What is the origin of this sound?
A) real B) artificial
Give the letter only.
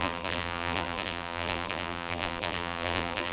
B